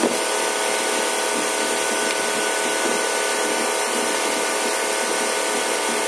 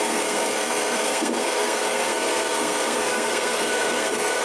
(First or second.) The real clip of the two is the first